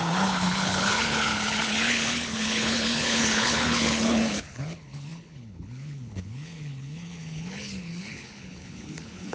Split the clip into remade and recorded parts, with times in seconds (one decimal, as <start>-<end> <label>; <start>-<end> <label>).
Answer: 0.0-9.3 remade